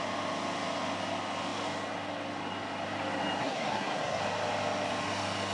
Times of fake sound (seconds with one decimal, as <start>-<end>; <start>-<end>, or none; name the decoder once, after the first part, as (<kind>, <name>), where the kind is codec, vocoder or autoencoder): 3.4-4.2 (codec, SNAC)